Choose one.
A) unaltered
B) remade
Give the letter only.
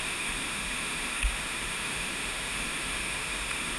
B